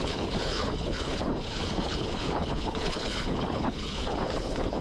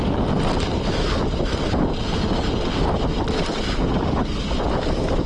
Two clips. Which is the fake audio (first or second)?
first